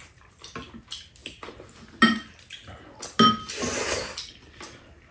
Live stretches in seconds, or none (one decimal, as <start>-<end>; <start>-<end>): 0.0-5.1